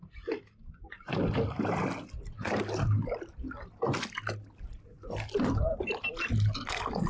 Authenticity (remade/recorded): recorded